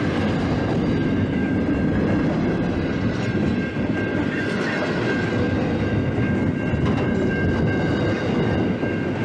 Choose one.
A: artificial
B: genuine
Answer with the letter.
B